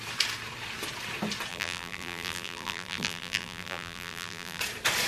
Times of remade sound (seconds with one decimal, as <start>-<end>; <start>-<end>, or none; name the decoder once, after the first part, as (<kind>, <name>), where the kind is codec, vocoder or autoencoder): 1.5-4.6 (vocoder, BigVGAN v2)